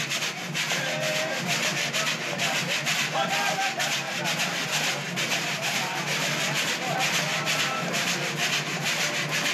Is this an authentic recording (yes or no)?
yes